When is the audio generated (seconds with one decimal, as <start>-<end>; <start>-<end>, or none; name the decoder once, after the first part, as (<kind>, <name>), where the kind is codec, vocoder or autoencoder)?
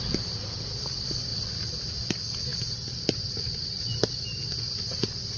none